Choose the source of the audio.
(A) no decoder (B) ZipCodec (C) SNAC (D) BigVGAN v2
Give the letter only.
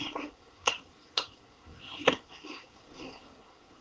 C